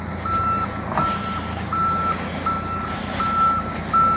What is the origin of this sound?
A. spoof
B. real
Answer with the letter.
B